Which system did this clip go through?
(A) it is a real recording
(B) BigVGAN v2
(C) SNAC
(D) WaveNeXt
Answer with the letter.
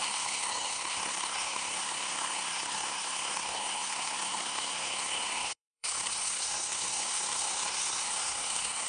C